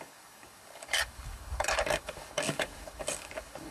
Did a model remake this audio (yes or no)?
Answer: yes